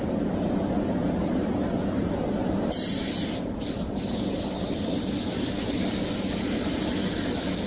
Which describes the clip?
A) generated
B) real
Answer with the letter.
B